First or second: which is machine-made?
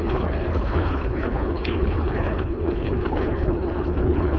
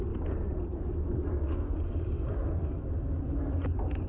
first